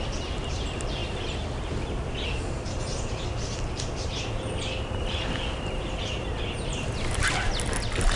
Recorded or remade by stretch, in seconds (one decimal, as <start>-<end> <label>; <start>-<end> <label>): 0.0-8.2 recorded